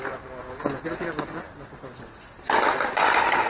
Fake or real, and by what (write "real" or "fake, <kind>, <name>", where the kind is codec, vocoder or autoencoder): real